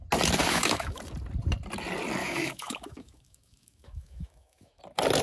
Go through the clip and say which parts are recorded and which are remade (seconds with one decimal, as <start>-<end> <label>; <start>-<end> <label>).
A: 0.0-0.4 recorded; 0.4-1.0 remade; 1.0-2.2 recorded; 2.2-4.8 remade; 4.8-5.2 recorded